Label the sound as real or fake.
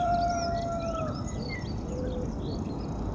real